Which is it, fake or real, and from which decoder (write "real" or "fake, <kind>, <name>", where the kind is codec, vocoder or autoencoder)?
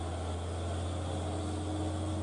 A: real